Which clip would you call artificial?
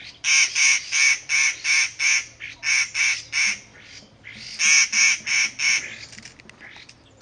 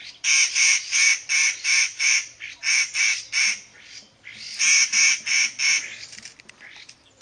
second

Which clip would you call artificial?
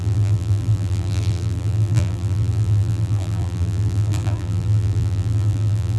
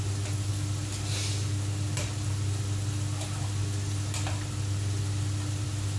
first